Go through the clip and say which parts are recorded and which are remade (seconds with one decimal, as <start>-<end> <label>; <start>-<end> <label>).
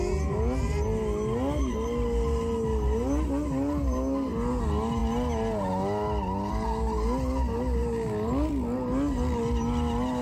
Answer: 0.0-10.2 recorded